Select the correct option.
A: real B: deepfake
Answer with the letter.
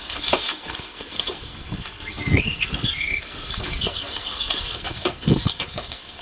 B